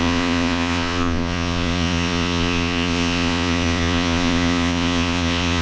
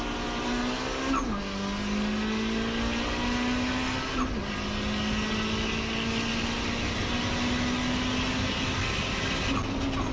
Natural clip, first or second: second